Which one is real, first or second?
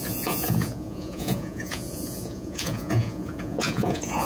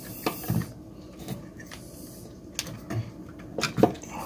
second